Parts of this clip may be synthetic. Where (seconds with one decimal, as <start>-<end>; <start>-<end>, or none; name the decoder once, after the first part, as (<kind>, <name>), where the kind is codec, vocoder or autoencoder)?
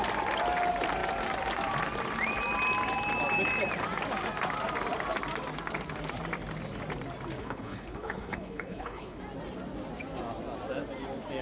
7.4-9.2 (codec, HILCodec)